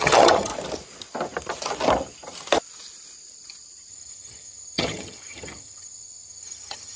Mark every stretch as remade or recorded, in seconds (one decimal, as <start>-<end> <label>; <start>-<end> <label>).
0.0-0.5 remade; 0.5-3.9 recorded; 3.9-7.0 remade

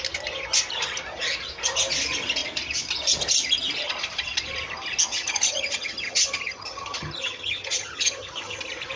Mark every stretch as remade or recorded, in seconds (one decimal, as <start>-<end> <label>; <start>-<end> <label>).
0.0-5.1 recorded; 5.1-8.6 remade; 8.6-9.0 recorded

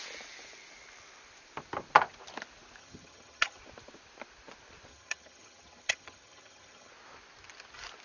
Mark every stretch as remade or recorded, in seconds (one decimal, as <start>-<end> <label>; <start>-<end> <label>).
0.0-2.8 recorded; 2.8-3.6 remade; 3.6-4.9 recorded; 4.9-6.9 remade; 6.9-8.0 recorded

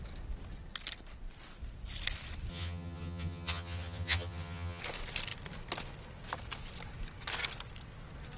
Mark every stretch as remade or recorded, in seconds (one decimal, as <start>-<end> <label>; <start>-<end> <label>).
0.0-2.5 recorded; 2.5-4.8 remade; 4.8-8.4 recorded

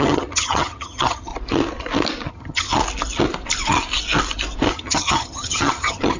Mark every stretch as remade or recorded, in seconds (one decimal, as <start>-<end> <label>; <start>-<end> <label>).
0.0-1.3 remade; 1.3-2.3 recorded; 2.3-2.7 remade; 2.7-4.7 recorded; 4.7-6.2 remade

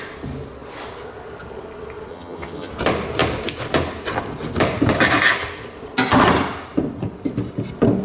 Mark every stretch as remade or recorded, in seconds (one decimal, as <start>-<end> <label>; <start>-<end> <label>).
0.0-2.1 recorded; 2.1-2.7 remade; 2.7-8.0 recorded

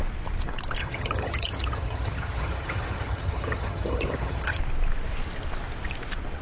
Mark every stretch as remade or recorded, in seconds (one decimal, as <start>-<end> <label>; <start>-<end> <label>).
0.0-0.8 recorded; 0.8-4.6 remade; 4.6-6.4 recorded

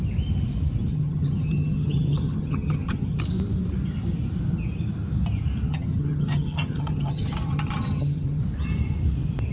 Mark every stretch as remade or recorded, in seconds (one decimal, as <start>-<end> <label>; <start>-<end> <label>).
0.0-0.9 recorded; 0.9-3.2 remade; 3.2-5.7 recorded; 5.7-8.4 remade; 8.4-9.5 recorded